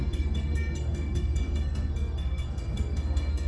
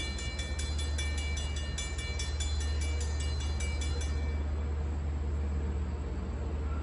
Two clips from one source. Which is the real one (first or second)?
second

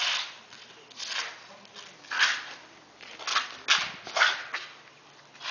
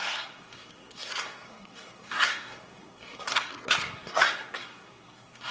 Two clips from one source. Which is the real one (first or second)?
first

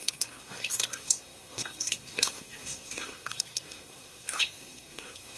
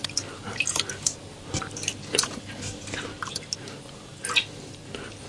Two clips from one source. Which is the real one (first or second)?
second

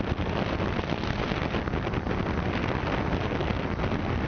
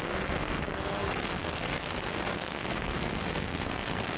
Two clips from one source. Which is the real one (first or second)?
first